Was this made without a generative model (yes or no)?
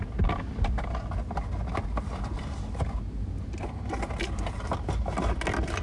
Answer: yes